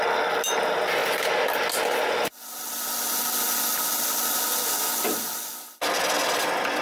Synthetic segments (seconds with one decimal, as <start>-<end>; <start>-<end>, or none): none